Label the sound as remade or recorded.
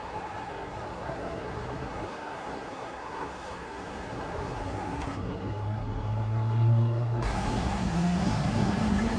remade